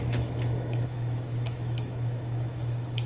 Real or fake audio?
fake